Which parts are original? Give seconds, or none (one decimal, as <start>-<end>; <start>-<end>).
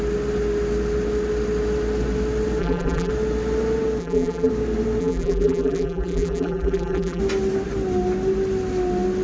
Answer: 0.0-2.6; 3.1-4.0; 4.5-5.0; 7.2-9.2